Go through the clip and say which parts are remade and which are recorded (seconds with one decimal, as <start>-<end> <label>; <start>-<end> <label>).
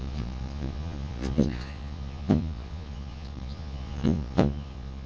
0.0-5.1 remade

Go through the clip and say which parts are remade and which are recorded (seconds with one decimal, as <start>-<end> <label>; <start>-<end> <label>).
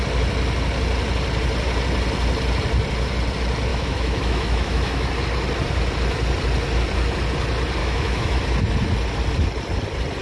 0.0-3.7 recorded; 3.7-5.1 remade; 5.1-7.8 recorded; 7.8-8.4 remade; 8.4-10.2 recorded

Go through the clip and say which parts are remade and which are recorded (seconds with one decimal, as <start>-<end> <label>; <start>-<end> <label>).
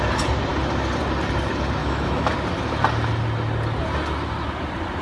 0.0-1.8 recorded; 1.8-2.3 remade; 2.3-5.0 recorded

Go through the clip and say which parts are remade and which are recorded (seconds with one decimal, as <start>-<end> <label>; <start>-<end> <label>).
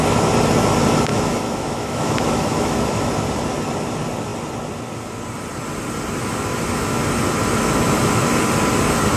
0.0-1.1 recorded; 1.1-3.1 remade; 3.1-9.2 recorded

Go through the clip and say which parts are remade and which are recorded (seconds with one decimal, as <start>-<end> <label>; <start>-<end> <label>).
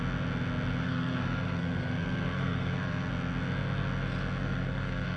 0.0-0.8 recorded; 0.8-3.1 remade; 3.1-4.4 recorded; 4.4-5.2 remade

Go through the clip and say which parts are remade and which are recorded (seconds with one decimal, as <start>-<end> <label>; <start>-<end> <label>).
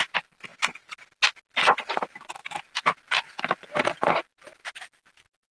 0.0-5.5 recorded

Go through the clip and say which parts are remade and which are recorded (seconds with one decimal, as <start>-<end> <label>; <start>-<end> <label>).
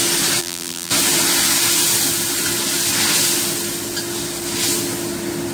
0.0-0.4 recorded; 0.4-0.9 remade; 0.9-5.5 recorded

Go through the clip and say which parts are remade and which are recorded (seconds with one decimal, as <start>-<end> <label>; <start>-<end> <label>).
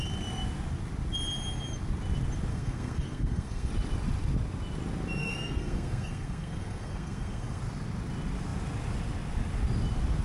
0.0-2.5 recorded; 2.5-3.7 remade; 3.7-5.2 recorded; 5.2-7.6 remade; 7.6-10.2 recorded